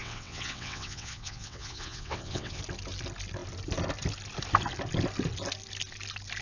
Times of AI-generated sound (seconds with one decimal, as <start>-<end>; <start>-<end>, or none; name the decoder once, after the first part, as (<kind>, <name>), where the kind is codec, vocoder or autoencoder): 0.0-2.6 (vocoder, WaveNeXt)